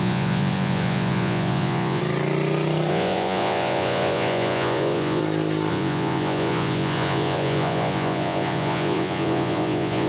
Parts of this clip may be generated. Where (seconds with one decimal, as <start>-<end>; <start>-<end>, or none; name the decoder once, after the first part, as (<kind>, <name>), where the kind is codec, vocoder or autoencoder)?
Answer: 0.0-2.0 (vocoder, Vocos); 2.9-5.2; 5.7-10.1